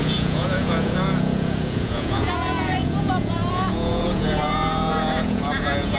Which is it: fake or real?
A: fake